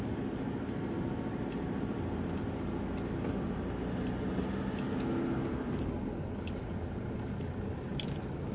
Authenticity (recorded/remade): recorded